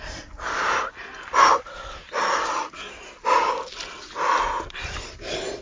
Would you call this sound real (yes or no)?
yes